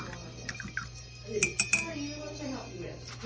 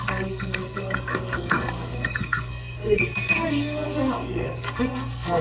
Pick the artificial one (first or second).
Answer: second